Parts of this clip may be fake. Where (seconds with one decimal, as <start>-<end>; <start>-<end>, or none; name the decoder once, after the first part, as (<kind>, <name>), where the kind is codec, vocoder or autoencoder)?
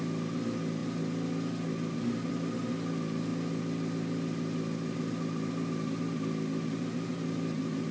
none